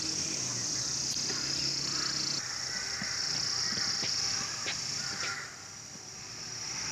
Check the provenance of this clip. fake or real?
fake